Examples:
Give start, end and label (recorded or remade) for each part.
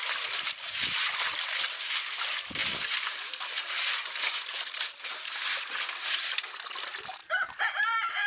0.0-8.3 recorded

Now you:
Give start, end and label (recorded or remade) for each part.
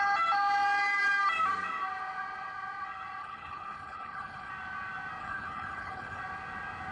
0.0-3.2 recorded; 3.2-4.5 remade; 4.5-5.2 recorded; 5.2-6.2 remade; 6.2-6.9 recorded